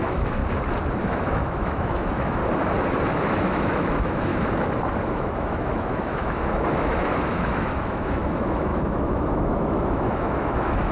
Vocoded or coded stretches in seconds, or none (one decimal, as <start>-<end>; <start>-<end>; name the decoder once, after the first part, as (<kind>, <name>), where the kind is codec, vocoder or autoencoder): 0.0-0.4 (autoencoder, DAC-VAE); 1.0-2.4; 3.0-4.3; 5.0-10.9